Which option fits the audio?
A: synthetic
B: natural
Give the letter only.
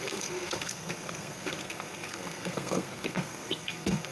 A